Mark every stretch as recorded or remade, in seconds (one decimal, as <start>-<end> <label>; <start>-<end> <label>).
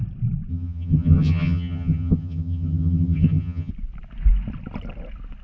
0.0-0.5 recorded; 0.5-3.7 remade; 3.7-5.4 recorded